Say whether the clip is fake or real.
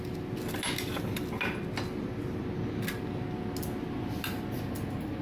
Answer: real